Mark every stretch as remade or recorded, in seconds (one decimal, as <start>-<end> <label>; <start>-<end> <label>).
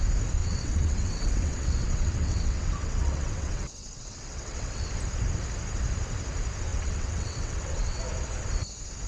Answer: 0.0-0.4 recorded; 0.4-4.9 remade; 4.9-6.7 recorded; 6.7-8.0 remade; 8.0-9.1 recorded